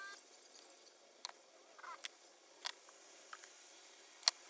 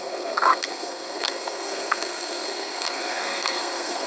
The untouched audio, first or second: first